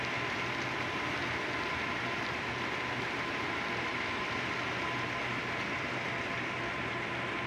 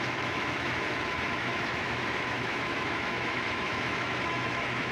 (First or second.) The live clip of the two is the first